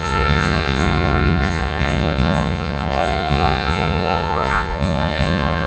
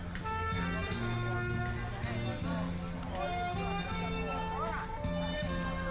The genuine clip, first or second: second